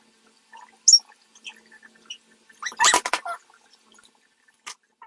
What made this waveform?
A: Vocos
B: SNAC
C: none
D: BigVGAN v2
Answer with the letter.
C